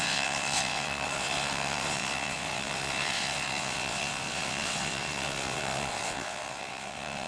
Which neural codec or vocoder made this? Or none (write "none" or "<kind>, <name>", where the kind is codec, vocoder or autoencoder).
vocoder, WaveNeXt